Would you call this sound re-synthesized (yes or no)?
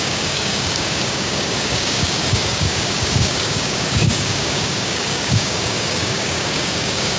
yes